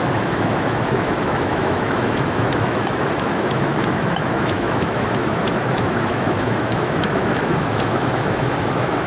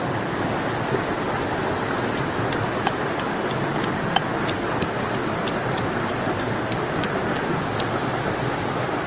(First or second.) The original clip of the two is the second